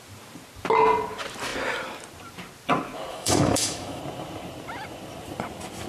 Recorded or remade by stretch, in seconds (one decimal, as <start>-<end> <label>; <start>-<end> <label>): 0.0-3.1 recorded; 3.1-4.0 remade; 4.0-5.9 recorded